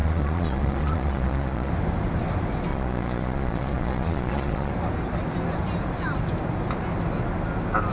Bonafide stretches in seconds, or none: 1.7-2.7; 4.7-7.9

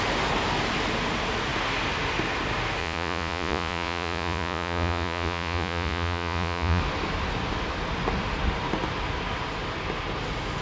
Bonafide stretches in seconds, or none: 0.0-2.8; 6.8-10.6